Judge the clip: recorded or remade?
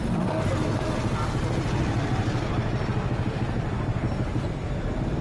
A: recorded